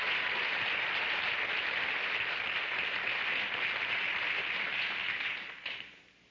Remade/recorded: recorded